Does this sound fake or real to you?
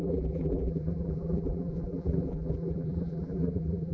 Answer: fake